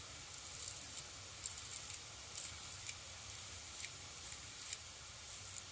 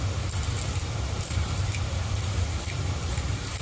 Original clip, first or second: first